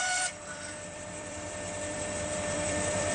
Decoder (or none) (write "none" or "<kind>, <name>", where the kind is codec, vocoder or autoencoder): vocoder, BigVGAN v2